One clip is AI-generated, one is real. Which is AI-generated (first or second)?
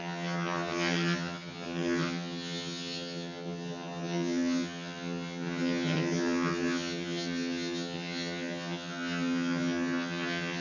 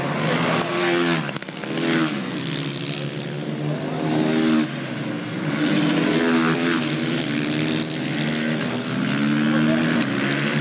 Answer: first